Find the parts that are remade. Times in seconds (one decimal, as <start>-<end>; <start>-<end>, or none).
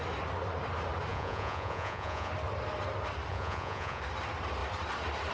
1.1-2.3; 3.3-4.0